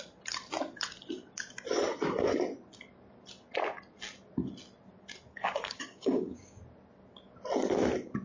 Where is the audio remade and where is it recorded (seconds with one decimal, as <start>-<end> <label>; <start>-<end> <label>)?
0.0-5.3 recorded; 5.3-6.6 remade; 6.6-8.2 recorded